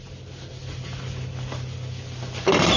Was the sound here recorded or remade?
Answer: recorded